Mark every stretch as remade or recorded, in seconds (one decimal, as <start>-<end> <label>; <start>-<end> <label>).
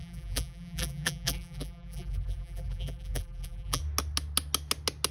0.0-3.8 remade; 3.8-5.1 recorded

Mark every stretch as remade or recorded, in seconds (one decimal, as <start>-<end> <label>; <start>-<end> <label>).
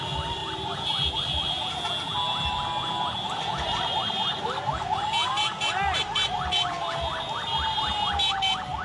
0.0-8.8 recorded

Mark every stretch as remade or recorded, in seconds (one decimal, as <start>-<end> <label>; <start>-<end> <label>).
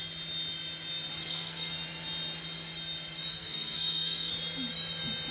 0.0-1.2 recorded; 1.2-1.7 remade; 1.7-3.3 recorded; 3.3-4.3 remade; 4.3-5.3 recorded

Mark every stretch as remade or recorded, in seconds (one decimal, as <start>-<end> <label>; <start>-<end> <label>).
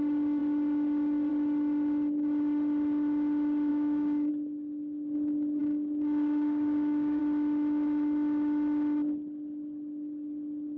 0.0-3.7 recorded; 3.7-4.3 remade; 4.3-5.6 recorded; 5.6-7.2 remade; 7.2-10.8 recorded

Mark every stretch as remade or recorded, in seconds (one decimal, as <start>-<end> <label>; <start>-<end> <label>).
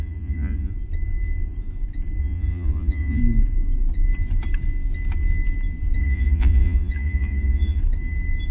0.0-0.7 remade; 0.7-2.2 recorded; 2.2-3.2 remade; 3.2-6.0 recorded; 6.0-7.8 remade; 7.8-8.5 recorded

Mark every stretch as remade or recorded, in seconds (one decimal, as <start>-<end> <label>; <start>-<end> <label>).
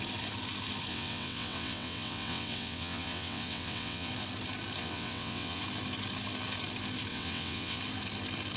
0.0-0.9 recorded; 0.9-4.1 remade; 4.1-4.8 recorded; 4.8-5.6 remade; 5.6-7.1 recorded; 7.1-7.8 remade; 7.8-8.6 recorded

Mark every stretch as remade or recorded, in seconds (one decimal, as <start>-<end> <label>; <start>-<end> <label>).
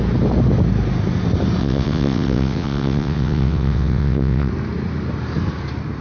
0.0-1.6 recorded; 1.6-4.5 remade; 4.5-6.0 recorded